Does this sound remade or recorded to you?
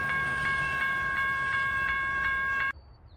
remade